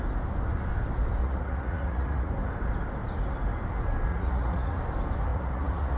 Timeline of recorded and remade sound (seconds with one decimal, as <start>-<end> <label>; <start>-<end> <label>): 0.0-1.2 recorded; 1.2-2.3 remade; 2.3-4.1 recorded; 4.1-4.8 remade; 4.8-5.3 recorded; 5.3-6.0 remade